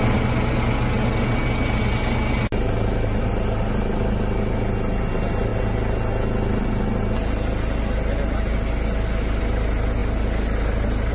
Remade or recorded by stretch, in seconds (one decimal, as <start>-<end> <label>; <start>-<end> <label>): 0.0-11.1 recorded